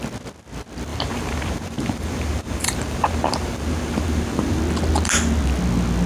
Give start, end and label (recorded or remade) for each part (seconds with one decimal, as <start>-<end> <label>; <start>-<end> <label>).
0.0-0.9 recorded; 0.9-4.6 remade; 4.6-6.1 recorded